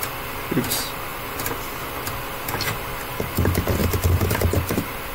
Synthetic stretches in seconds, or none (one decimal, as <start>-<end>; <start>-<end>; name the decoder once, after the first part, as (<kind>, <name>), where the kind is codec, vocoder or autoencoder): none